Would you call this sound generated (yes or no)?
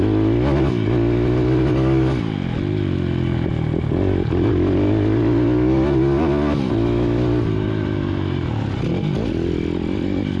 no